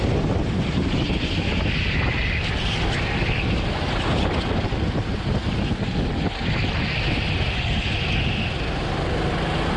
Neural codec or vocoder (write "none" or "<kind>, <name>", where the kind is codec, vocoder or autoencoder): none